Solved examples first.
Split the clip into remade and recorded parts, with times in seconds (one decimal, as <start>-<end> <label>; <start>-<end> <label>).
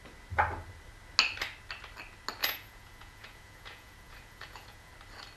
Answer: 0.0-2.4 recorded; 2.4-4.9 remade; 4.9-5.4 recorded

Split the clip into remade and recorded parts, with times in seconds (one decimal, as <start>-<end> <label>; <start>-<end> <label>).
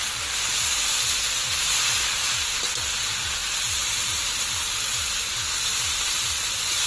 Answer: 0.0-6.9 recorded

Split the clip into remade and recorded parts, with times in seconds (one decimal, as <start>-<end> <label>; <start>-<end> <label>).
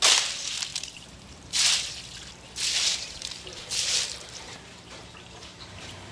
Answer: 0.0-0.7 recorded; 0.7-1.9 remade; 1.9-2.9 recorded; 2.9-6.1 remade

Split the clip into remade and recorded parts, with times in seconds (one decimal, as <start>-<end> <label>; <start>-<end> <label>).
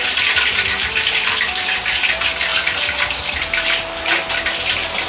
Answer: 0.0-5.1 recorded